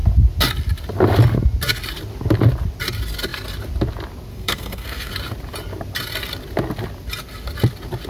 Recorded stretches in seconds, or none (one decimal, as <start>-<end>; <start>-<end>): 0.0-4.3; 5.1-8.1